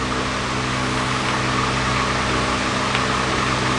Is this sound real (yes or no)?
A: yes